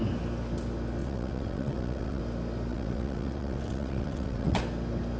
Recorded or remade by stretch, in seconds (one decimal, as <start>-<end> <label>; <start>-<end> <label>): 0.0-1.0 recorded; 1.0-2.2 remade; 2.2-2.7 recorded; 2.7-4.6 remade; 4.6-5.2 recorded